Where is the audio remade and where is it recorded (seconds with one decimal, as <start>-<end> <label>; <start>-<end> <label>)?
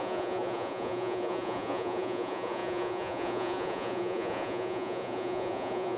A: 0.0-6.0 remade